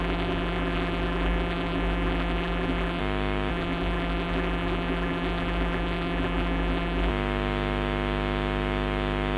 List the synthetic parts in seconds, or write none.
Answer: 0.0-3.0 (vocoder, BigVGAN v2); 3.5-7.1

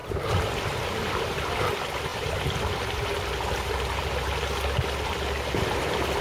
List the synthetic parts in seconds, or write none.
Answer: none